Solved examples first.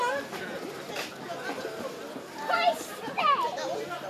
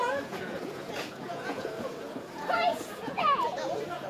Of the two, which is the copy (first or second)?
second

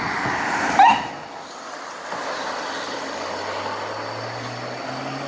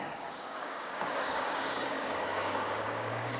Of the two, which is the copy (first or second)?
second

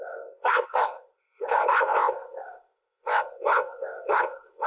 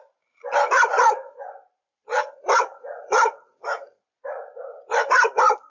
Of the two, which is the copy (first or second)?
first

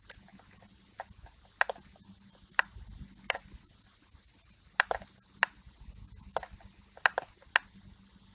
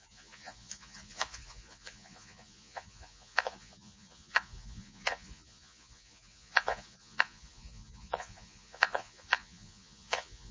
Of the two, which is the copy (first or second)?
second